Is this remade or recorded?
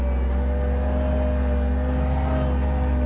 recorded